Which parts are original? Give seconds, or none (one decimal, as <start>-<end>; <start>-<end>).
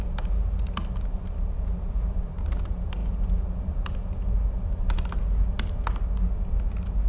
0.0-7.1